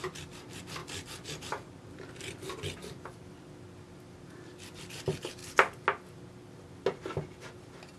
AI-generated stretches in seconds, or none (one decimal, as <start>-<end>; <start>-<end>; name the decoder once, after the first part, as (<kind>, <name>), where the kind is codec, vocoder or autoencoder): 0.8-1.7 (vocoder, BigVGAN v2)